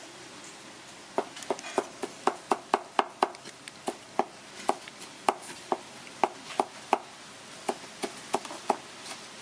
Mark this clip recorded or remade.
recorded